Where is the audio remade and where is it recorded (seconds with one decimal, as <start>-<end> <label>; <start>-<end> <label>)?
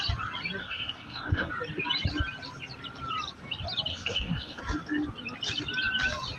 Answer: 0.0-0.6 recorded; 0.6-1.5 remade; 1.5-3.9 recorded; 3.9-4.6 remade; 4.6-6.4 recorded